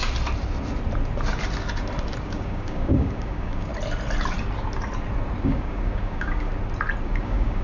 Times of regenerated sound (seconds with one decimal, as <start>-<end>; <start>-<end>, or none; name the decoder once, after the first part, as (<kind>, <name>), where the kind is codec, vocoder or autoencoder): 2.2-3.7 (codec, DAC); 5.4-6.5; 7.0-7.6